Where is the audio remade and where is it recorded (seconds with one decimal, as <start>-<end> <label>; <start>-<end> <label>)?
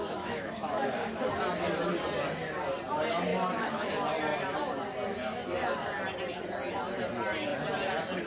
0.0-1.3 remade; 1.3-3.3 recorded; 3.3-3.9 remade; 3.9-8.3 recorded